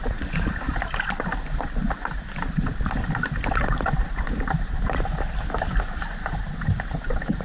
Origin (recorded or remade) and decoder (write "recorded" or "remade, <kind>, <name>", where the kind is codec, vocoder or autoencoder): recorded